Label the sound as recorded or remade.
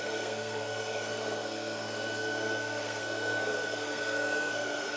remade